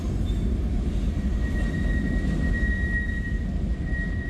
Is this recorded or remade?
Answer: recorded